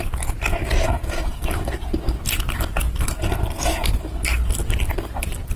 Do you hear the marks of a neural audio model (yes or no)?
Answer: no